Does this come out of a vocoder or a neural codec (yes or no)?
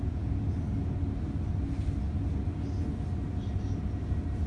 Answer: no